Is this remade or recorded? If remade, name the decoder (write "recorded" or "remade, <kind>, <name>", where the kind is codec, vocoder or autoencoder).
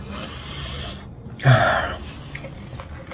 recorded